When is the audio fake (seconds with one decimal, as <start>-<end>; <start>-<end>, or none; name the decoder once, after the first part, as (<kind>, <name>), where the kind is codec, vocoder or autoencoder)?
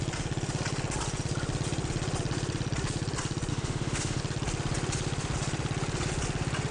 3.5-4.2 (autoencoder, DAC-VAE)